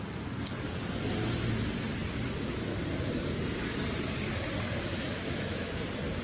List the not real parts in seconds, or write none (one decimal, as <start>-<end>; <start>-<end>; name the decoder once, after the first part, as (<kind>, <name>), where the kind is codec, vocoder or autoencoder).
4.9-5.8 (autoencoder, DAC-VAE)